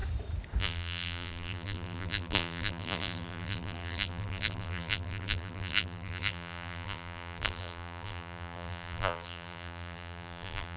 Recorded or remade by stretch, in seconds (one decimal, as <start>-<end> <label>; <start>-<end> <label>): 0.0-0.6 recorded; 0.6-10.8 remade